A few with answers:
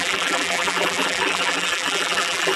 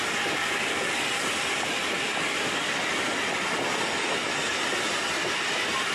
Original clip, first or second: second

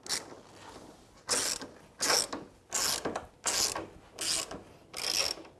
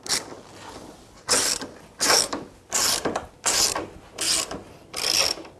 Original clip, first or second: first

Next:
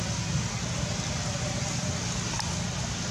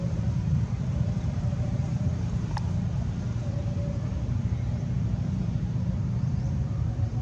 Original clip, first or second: first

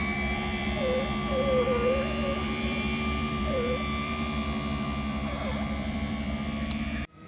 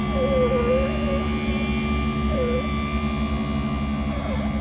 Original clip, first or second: second